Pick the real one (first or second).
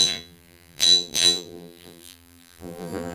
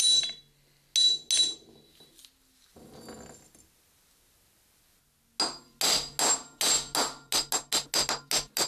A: second